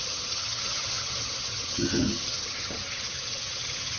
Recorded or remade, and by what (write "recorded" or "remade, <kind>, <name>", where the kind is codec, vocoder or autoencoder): remade, vocoder, HiFi-GAN